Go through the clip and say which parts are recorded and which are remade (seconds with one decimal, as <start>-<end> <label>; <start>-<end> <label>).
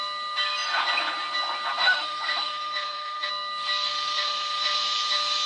0.0-1.8 recorded; 1.8-3.3 remade; 3.3-3.9 recorded; 3.9-5.5 remade